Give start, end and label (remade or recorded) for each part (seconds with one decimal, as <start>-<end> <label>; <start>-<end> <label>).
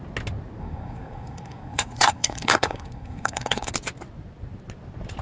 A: 0.0-0.6 recorded; 0.6-3.7 remade; 3.7-5.2 recorded